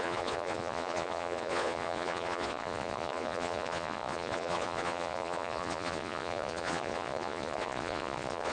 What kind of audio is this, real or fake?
fake